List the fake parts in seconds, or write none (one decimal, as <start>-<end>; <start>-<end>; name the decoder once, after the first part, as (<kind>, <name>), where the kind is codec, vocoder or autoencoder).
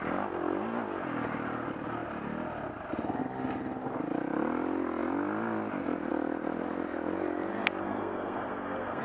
7.8-9.0 (codec, SNAC)